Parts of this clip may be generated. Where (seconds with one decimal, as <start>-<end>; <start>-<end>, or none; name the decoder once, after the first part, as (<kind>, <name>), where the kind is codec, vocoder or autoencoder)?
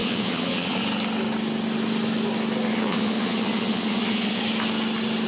0.0-0.8 (vocoder, Vocos); 2.7-4.4